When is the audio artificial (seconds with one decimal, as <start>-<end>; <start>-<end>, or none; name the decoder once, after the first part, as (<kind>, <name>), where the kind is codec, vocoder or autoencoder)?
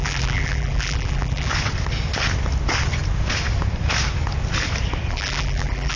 0.0-1.5 (vocoder, BigVGAN v2); 5.1-6.0